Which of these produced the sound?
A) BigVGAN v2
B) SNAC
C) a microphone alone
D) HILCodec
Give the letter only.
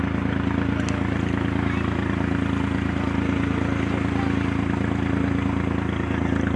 C